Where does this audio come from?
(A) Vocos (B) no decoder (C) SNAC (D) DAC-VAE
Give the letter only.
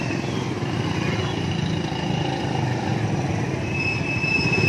B